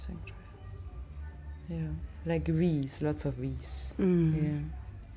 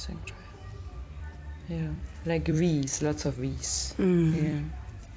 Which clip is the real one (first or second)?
first